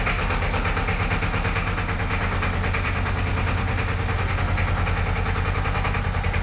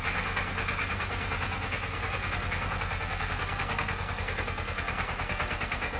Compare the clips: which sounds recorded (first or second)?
first